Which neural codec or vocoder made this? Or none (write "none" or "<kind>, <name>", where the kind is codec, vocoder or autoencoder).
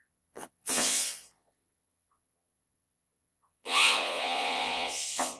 vocoder, Vocos